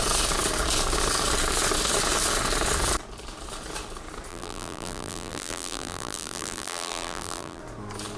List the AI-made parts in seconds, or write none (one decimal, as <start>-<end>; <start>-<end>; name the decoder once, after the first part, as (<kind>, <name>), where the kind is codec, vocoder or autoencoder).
4.3-7.6 (vocoder, BigVGAN v2)